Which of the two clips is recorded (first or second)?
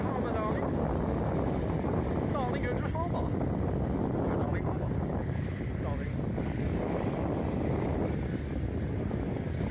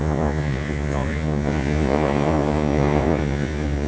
first